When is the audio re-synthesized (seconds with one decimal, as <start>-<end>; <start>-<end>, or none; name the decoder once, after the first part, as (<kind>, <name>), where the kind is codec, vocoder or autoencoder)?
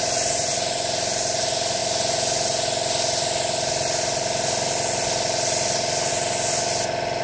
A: none